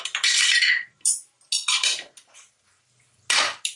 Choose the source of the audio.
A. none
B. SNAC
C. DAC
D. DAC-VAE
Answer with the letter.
A